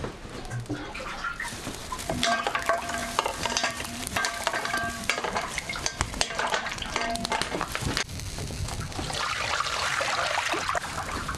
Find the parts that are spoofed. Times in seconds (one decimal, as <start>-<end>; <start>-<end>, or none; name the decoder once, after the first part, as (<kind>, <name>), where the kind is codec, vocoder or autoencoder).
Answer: 1.8-2.4 (vocoder, BigVGAN v2); 3.0-6.5